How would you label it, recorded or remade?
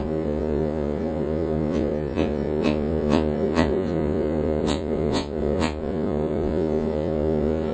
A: remade